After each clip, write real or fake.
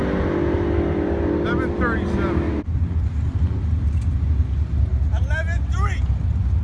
real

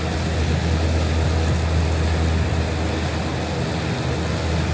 real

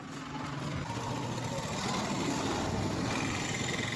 real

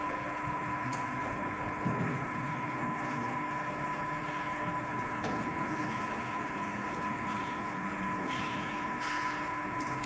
fake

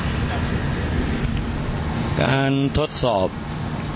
real